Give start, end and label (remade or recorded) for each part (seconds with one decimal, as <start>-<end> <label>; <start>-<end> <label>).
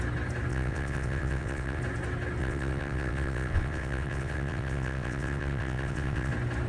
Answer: 0.0-0.5 recorded; 0.5-1.8 remade; 1.8-2.4 recorded; 2.4-6.3 remade; 6.3-6.7 recorded